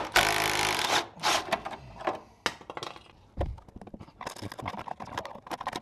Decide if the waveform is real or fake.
real